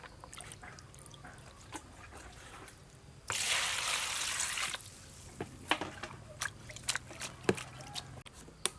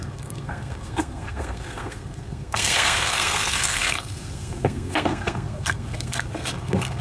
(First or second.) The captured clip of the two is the first